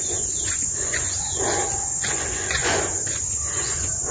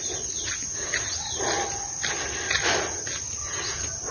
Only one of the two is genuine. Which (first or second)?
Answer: second